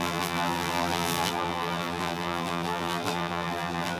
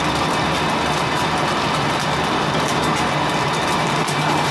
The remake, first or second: first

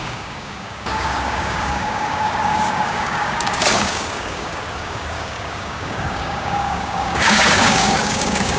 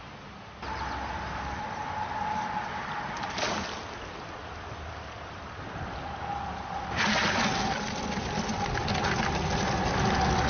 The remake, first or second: first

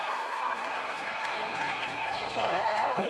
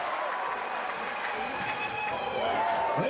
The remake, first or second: first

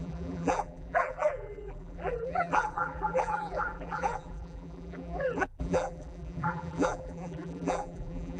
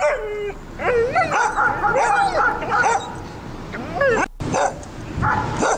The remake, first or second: first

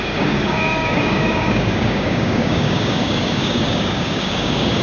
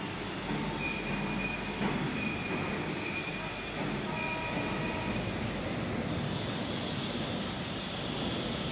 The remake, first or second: first